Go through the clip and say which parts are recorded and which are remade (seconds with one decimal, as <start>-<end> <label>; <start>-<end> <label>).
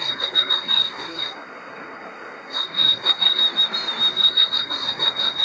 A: 0.0-3.4 remade; 3.4-4.1 recorded; 4.1-5.4 remade